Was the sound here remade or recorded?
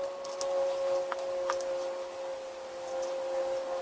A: recorded